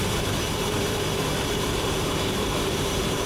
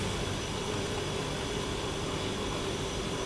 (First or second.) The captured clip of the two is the second